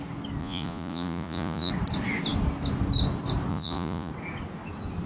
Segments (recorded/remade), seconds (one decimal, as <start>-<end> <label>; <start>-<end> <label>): 0.0-0.4 recorded; 0.4-1.7 remade; 1.7-3.5 recorded; 3.5-4.1 remade; 4.1-5.1 recorded